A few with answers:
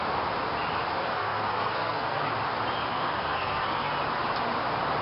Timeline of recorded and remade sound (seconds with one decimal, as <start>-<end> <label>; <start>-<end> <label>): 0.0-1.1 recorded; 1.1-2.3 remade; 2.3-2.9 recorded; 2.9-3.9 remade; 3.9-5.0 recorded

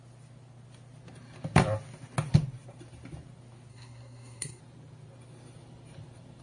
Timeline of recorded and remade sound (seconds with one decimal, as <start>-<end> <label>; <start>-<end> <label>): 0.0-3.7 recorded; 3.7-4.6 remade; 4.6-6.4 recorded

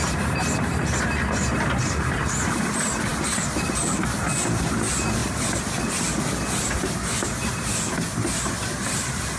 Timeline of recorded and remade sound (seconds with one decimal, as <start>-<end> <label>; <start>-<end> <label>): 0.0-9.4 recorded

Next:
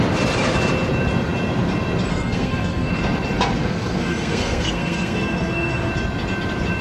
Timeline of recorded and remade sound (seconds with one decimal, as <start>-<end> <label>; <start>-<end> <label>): 0.0-2.1 recorded; 2.1-2.9 remade; 2.9-3.6 recorded; 3.6-5.9 remade; 5.9-6.8 recorded

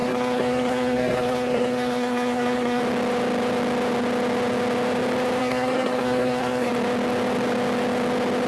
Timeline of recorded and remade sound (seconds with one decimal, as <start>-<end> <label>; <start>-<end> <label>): 0.0-2.8 remade; 2.8-5.4 recorded; 5.4-6.7 remade; 6.7-8.5 recorded

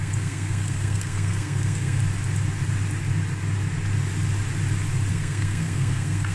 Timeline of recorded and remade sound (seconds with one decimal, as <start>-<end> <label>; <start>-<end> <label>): 0.0-2.0 remade; 2.0-5.1 recorded; 5.1-6.3 remade